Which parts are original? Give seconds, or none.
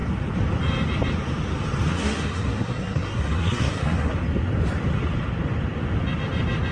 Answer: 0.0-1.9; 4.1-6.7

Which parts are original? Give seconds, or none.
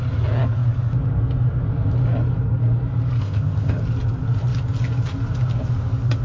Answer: 0.0-3.2; 3.8-6.2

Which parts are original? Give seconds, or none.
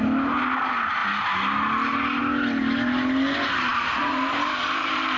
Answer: 0.0-3.7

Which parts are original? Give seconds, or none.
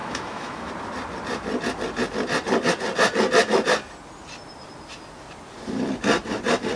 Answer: 0.7-6.8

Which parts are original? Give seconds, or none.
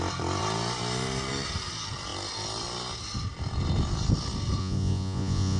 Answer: 0.0-4.6